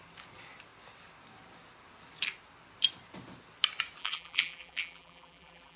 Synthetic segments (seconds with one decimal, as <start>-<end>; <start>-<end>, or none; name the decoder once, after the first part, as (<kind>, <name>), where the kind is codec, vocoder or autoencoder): 4.0-5.8 (vocoder, BigVGAN v2)